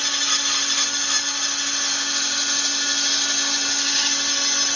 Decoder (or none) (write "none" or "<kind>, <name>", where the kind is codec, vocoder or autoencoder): none